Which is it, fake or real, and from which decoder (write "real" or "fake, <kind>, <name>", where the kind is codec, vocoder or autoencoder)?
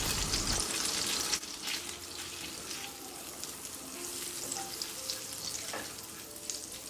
real